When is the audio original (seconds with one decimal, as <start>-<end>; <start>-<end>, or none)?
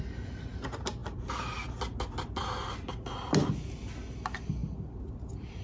0.0-5.6